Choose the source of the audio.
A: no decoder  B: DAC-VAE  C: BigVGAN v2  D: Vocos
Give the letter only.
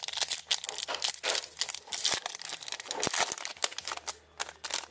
A